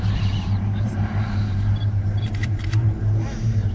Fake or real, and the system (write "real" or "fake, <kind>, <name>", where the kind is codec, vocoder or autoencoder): fake, vocoder, BigVGAN v2